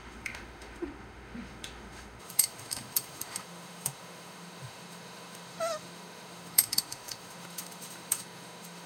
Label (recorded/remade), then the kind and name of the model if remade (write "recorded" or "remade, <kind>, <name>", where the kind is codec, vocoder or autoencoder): remade, autoencoder, DAC-VAE